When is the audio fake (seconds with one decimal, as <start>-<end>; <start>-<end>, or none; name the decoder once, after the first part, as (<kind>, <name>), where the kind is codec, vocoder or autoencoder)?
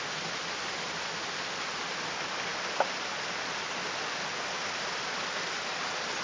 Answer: none